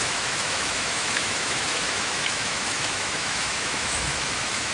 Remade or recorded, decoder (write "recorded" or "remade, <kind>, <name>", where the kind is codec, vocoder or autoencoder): remade, autoencoder, DAC-VAE